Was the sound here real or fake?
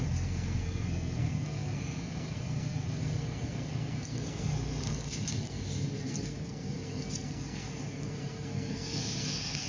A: fake